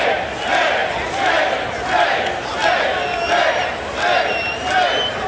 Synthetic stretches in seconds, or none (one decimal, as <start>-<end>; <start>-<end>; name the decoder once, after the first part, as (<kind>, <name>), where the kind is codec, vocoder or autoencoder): none